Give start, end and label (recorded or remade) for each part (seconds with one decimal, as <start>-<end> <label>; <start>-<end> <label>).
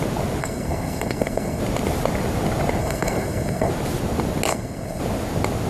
0.0-0.4 recorded; 0.4-1.6 remade; 1.6-2.8 recorded; 2.8-3.7 remade; 3.7-4.5 recorded; 4.5-5.0 remade; 5.0-5.7 recorded